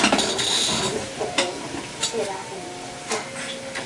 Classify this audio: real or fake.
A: real